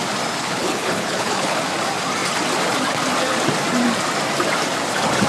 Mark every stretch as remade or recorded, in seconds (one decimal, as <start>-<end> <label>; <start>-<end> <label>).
0.0-0.4 recorded; 0.4-1.6 remade; 1.6-5.3 recorded